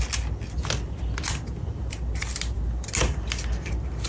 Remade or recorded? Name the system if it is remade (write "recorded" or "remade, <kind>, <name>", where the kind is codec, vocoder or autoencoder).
recorded